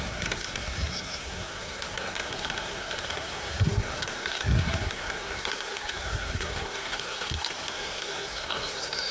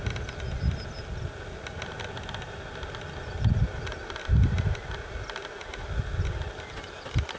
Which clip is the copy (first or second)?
first